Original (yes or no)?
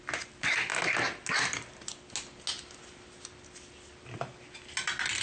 yes